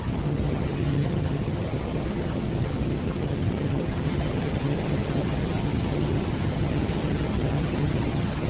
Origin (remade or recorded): remade